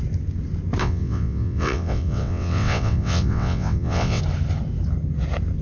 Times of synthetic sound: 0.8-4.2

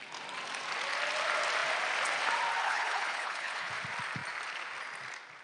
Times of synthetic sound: 2.6-3.7

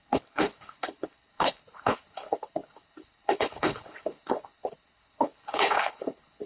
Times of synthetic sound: 0.0-6.5

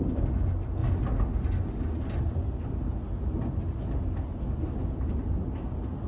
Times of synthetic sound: none

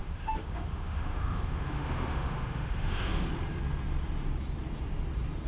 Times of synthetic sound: 0.0-3.3